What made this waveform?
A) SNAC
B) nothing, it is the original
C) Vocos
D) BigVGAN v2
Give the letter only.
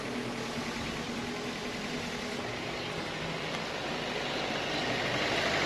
B